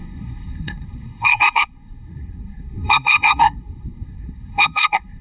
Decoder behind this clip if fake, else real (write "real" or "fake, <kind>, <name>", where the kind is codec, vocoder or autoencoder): fake, codec, SNAC